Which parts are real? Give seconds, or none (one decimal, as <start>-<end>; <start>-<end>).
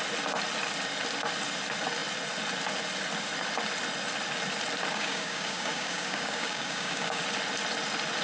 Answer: 0.0-4.9; 7.2-8.2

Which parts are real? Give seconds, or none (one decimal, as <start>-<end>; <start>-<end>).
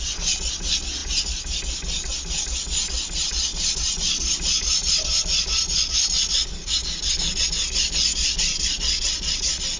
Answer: 0.0-1.0; 1.6-9.8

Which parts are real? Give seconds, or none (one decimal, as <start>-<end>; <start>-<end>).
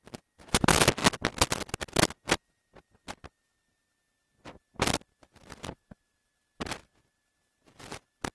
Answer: 0.0-8.3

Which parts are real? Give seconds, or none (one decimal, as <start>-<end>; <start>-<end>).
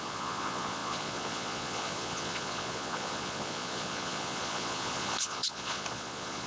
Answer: none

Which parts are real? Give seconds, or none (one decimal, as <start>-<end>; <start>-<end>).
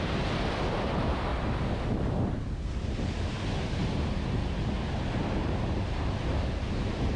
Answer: 1.3-3.2; 4.4-5.4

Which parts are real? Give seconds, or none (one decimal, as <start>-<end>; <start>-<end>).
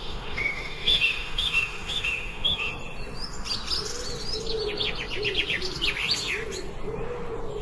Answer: 2.7-7.6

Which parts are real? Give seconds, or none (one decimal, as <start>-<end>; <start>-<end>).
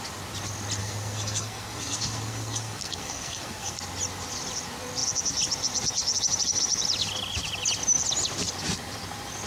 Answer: 0.0-0.8; 3.8-9.5